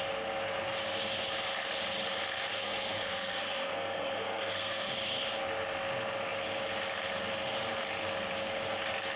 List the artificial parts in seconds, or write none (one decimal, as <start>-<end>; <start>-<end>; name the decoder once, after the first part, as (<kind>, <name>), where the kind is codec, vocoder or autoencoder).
2.5-4.9 (codec, SNAC)